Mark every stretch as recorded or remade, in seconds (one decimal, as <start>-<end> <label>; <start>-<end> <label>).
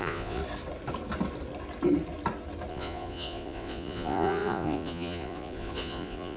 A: 0.0-0.4 remade; 0.4-2.7 recorded; 2.7-6.4 remade